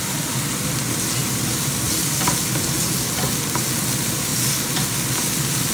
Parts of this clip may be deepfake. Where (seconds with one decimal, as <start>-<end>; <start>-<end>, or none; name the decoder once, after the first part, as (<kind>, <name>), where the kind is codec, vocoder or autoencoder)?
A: none